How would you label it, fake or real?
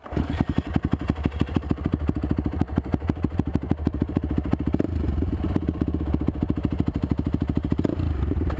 fake